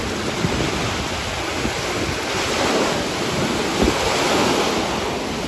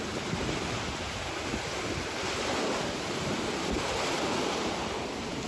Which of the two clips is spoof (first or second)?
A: second